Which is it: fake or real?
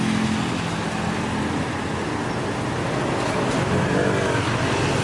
real